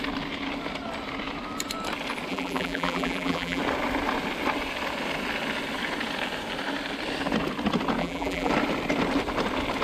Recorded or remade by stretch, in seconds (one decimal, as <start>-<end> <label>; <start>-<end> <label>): 0.0-2.3 recorded; 2.3-3.6 remade; 3.6-8.0 recorded; 8.0-8.5 remade; 8.5-9.8 recorded